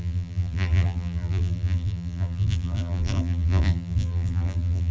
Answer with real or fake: fake